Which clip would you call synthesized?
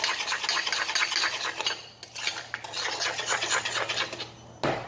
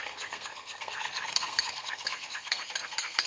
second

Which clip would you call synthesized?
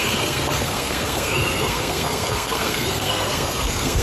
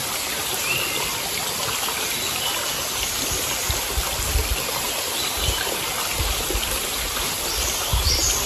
first